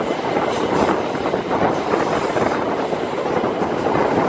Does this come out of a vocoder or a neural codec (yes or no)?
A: no